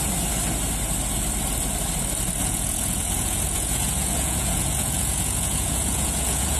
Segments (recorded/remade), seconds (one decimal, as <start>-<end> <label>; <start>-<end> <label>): 0.0-2.4 recorded; 2.4-6.6 remade